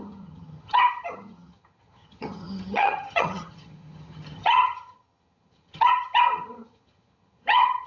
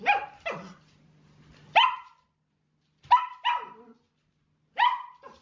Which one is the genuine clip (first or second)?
second